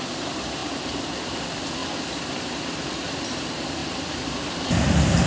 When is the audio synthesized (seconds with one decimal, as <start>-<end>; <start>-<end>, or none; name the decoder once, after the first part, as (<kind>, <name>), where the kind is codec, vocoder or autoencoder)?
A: 3.8-5.3 (vocoder, BigVGAN v2)